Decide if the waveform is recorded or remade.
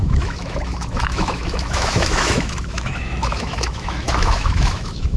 remade